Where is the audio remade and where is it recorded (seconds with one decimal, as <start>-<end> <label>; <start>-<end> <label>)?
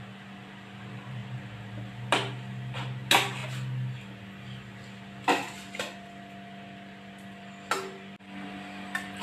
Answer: 0.0-9.2 recorded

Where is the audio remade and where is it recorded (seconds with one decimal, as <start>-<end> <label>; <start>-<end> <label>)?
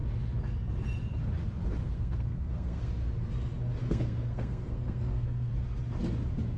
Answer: 0.0-1.8 recorded; 1.8-2.9 remade; 2.9-3.8 recorded; 3.8-5.5 remade; 5.5-6.6 recorded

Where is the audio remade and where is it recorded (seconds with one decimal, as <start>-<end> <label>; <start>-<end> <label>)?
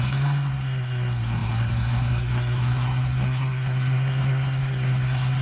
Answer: 0.0-5.4 remade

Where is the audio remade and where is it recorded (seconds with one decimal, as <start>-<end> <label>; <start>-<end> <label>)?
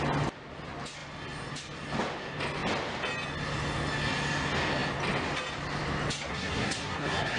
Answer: 0.0-6.3 recorded; 6.3-7.4 remade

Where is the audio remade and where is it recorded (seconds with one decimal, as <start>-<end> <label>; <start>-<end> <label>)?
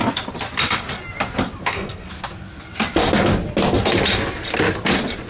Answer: 0.0-1.6 recorded; 1.6-2.1 remade; 2.1-5.3 recorded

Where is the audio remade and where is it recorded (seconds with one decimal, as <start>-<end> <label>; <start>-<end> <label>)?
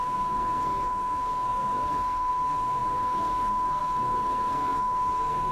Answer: 0.0-5.5 remade